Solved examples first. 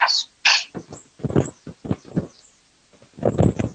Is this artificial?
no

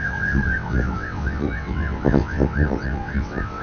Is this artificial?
yes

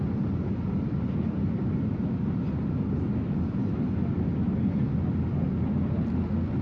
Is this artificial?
no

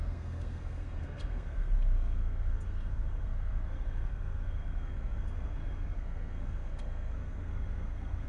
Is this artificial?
yes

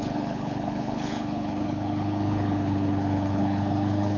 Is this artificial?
yes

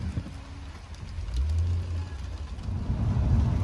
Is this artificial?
no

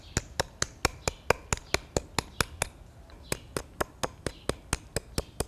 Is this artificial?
no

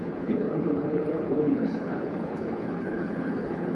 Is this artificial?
yes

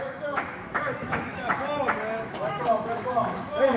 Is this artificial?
yes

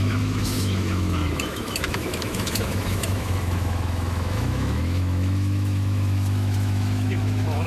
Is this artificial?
yes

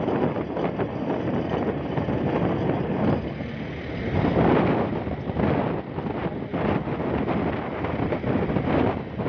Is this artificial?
no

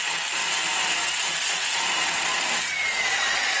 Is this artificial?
no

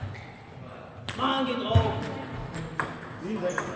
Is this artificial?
no